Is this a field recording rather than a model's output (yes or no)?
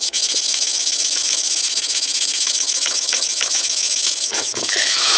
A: no